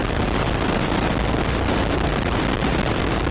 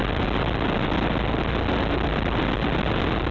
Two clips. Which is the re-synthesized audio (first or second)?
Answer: first